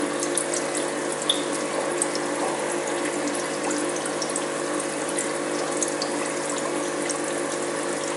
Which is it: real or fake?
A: real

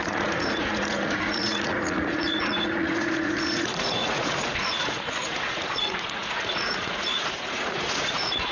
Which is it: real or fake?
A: fake